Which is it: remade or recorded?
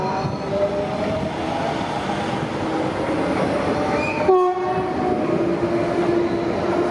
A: recorded